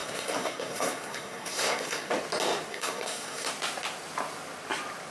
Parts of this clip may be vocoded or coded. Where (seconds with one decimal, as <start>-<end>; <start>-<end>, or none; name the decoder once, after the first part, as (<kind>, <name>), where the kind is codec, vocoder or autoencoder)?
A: 0.0-2.1 (codec, SNAC); 2.7-3.5